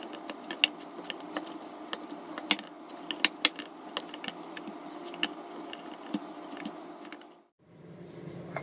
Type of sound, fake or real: real